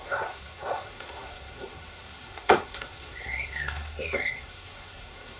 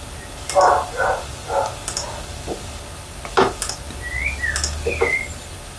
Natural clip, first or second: second